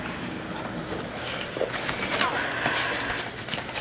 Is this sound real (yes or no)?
yes